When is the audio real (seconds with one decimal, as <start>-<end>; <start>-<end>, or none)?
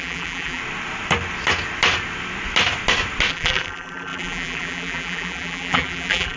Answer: 0.6-3.3